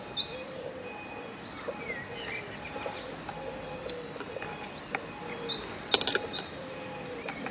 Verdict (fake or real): real